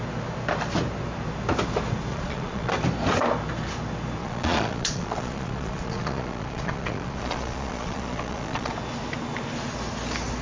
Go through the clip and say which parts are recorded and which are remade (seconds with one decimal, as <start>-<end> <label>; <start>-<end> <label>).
0.0-2.1 recorded; 2.1-2.7 remade; 2.7-4.2 recorded; 4.2-8.7 remade; 8.7-10.4 recorded